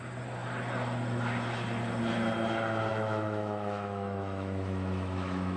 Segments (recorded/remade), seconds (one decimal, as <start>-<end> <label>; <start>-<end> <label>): 0.0-2.9 recorded; 2.9-5.6 remade